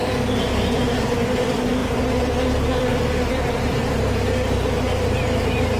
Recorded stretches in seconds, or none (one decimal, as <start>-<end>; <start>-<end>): 1.1-1.8; 4.8-5.8